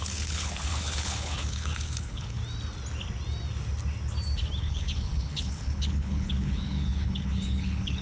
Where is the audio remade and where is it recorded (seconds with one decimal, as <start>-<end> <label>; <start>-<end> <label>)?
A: 0.0-2.4 remade; 2.4-4.6 recorded; 4.6-8.0 remade